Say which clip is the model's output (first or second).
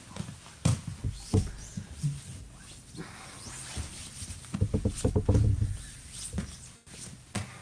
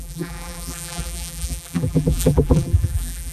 second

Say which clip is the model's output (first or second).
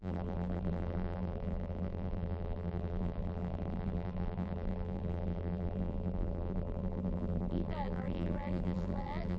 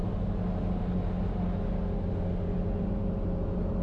first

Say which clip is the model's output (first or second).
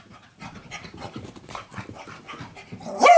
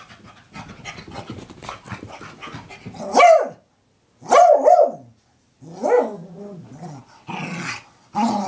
first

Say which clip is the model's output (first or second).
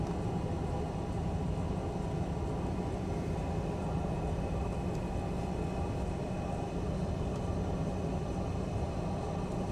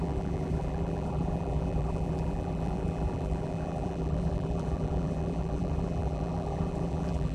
second